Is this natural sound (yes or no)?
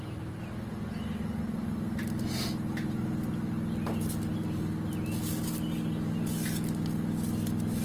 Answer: yes